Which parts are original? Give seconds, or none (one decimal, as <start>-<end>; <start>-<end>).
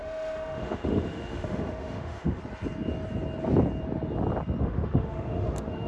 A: 2.4-4.6